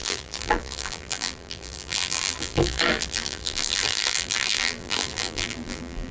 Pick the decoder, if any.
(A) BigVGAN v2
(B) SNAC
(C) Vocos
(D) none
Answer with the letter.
A